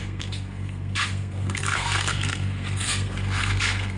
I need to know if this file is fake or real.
fake